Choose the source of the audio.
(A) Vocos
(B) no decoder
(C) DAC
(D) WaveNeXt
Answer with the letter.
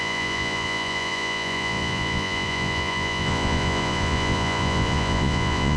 A